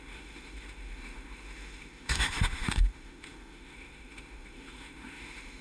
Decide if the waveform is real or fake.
fake